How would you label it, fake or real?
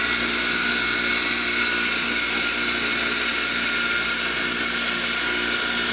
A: real